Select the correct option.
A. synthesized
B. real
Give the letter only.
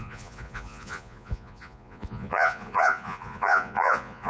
A